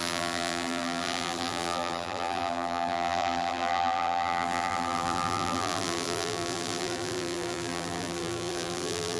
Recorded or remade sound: remade